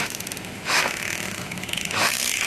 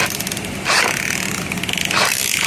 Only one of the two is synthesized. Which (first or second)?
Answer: first